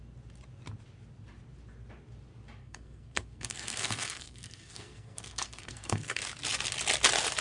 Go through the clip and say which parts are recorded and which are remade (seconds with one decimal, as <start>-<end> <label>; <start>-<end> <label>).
0.0-2.6 recorded; 2.6-6.2 remade; 6.2-7.4 recorded